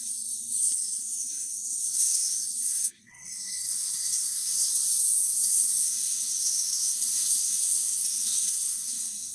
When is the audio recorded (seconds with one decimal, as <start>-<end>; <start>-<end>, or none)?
4.7-5.2